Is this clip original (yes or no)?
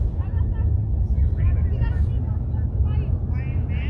yes